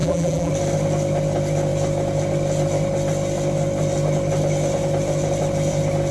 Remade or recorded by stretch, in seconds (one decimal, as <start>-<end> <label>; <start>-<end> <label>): 0.0-0.5 remade; 0.5-6.1 recorded